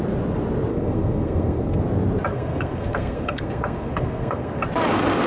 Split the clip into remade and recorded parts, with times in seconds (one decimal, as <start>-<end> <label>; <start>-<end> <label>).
0.0-0.7 recorded; 0.7-1.8 remade; 1.8-2.3 recorded; 2.3-4.6 remade; 4.6-5.3 recorded